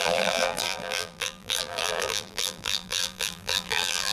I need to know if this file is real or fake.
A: fake